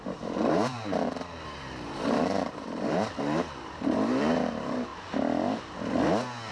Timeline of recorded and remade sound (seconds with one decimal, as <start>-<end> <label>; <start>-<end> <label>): 0.0-4.9 remade; 4.9-6.5 recorded